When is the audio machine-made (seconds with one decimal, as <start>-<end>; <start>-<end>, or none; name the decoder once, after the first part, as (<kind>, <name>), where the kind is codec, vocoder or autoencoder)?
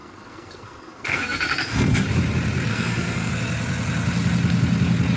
0.0-2.1 (codec, SNAC); 2.7-3.3